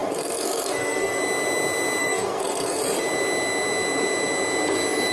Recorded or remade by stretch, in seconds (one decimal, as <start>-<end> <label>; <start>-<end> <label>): 0.0-1.2 remade; 1.2-2.0 recorded; 2.0-2.8 remade; 2.8-5.1 recorded